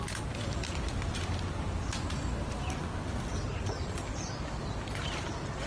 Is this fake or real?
real